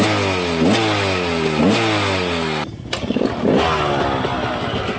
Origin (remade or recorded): recorded